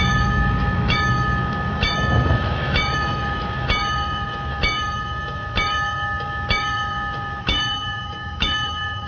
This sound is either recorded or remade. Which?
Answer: remade